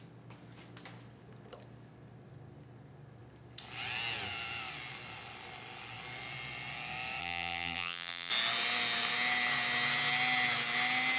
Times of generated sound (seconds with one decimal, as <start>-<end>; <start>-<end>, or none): 7.2-8.3